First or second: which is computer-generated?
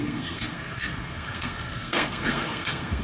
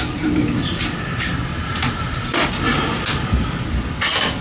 first